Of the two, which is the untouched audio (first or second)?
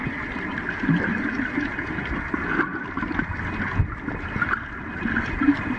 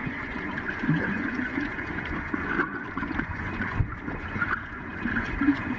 first